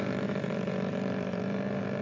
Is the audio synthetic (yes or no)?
yes